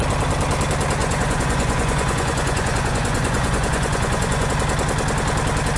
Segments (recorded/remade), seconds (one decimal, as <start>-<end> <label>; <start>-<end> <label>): 0.0-1.0 recorded; 1.0-4.5 remade; 4.5-5.8 recorded